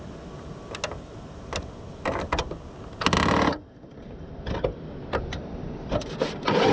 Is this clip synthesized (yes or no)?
no